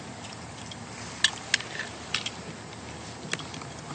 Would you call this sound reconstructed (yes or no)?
no